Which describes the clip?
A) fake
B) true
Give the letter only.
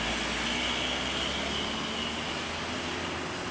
B